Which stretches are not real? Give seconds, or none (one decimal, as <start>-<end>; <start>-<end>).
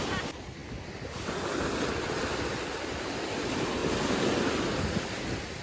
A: none